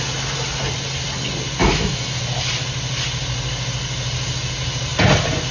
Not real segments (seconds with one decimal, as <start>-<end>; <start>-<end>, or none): 1.6-2.2